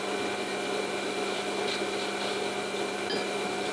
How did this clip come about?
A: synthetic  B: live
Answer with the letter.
B